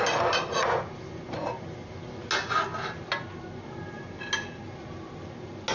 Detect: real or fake real